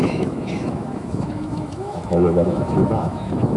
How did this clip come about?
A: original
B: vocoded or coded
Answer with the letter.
B